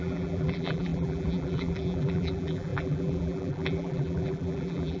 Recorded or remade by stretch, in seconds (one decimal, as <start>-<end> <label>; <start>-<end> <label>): 0.0-5.0 remade